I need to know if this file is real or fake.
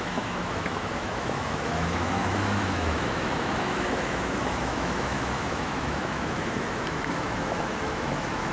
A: fake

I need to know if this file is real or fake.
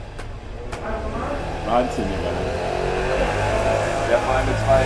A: real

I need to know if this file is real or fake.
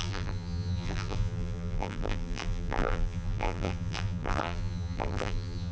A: fake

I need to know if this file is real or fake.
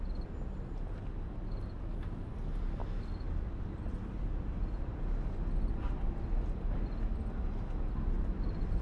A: real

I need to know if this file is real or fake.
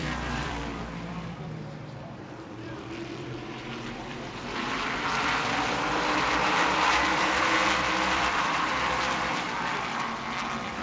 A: fake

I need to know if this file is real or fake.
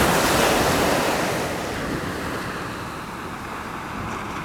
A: real